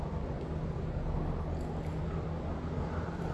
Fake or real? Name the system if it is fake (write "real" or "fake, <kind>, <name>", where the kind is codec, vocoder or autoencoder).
real